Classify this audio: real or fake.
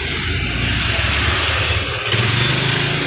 real